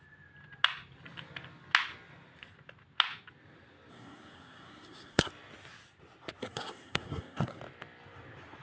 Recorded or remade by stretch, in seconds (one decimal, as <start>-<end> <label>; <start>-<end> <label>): 0.0-3.9 recorded; 3.9-5.3 remade; 5.3-6.4 recorded; 6.4-7.6 remade; 7.6-8.6 recorded